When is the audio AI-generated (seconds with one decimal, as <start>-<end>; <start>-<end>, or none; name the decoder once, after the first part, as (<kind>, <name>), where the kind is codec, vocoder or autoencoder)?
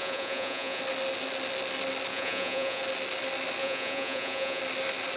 0.0-0.8 (vocoder, Vocos); 2.1-2.8; 3.6-4.6